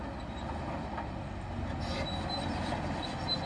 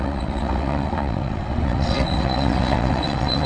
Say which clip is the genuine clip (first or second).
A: first